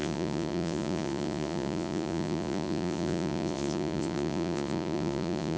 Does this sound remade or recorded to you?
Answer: remade